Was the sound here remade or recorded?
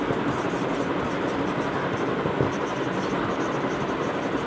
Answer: recorded